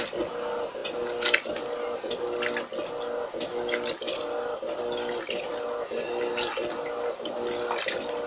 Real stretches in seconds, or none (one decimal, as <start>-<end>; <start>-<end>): 0.0-8.3